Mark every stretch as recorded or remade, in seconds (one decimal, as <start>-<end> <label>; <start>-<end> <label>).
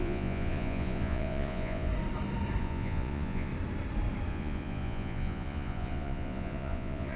0.0-1.9 remade; 1.9-2.6 recorded; 2.6-3.5 remade; 3.5-4.3 recorded; 4.3-7.2 remade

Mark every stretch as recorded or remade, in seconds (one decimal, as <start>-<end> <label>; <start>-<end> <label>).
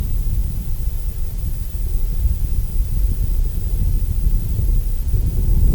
0.0-5.7 remade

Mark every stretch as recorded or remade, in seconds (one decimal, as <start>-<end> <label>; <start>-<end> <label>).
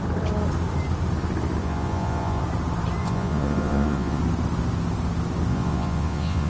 0.0-1.6 recorded; 1.6-2.4 remade; 2.4-3.0 recorded; 3.0-4.2 remade; 4.2-5.5 recorded; 5.5-6.5 remade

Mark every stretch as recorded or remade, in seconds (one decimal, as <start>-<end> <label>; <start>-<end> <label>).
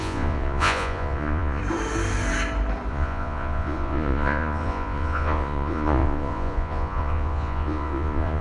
0.0-1.6 remade; 1.6-2.9 recorded; 2.9-8.4 remade